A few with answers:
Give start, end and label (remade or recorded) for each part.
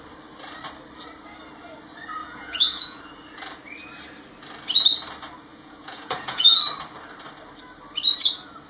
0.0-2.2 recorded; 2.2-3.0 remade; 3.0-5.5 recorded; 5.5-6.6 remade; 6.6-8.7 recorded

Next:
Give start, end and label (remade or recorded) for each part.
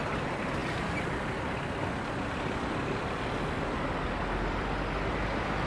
0.0-5.7 recorded